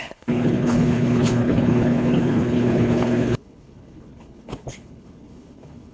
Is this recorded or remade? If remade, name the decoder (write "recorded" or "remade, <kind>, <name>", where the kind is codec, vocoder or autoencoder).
remade, codec, HILCodec